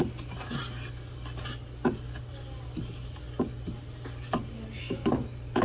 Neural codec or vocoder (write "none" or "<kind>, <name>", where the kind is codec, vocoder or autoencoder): none